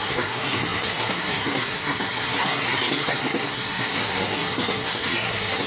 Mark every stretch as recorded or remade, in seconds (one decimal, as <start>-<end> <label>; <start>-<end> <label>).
0.0-5.7 remade